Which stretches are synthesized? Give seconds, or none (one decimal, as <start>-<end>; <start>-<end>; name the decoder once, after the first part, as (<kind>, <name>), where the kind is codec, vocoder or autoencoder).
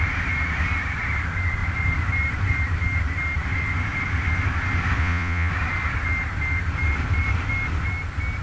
5.0-5.5 (vocoder, Vocos)